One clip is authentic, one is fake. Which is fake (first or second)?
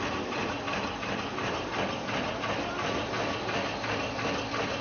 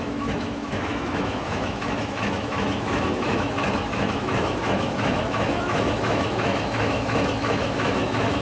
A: second